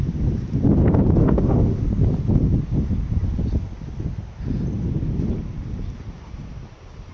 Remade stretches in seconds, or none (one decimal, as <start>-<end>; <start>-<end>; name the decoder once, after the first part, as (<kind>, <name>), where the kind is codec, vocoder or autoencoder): 1.2-1.8 (autoencoder, DAC-VAE)